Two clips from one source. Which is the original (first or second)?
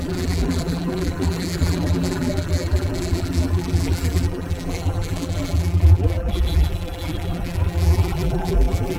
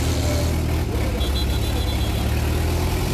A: second